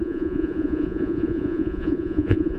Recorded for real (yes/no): no